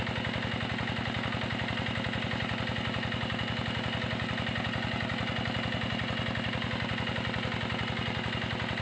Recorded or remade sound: recorded